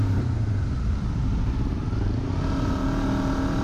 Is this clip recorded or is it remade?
recorded